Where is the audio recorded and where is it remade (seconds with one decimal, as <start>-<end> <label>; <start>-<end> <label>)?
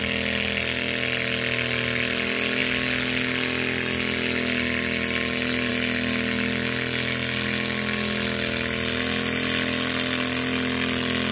0.0-11.3 recorded